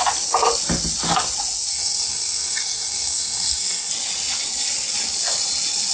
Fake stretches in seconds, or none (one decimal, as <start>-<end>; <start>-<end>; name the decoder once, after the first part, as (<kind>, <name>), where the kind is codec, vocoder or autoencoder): 1.7-3.9 (codec, SNAC)